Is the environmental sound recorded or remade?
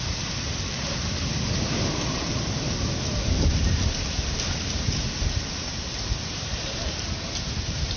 remade